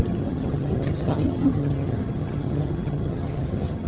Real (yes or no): no